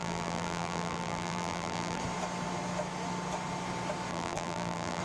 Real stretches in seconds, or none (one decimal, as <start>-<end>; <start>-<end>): 2.0-4.1